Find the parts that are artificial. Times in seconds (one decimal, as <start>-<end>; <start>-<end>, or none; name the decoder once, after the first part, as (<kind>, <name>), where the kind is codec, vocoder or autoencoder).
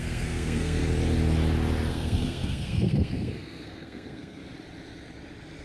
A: 0.0-0.8 (codec, SNAC); 1.9-4.4